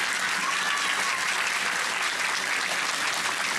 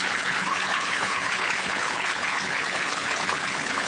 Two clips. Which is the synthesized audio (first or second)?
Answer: second